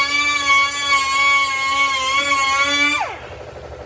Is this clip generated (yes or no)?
no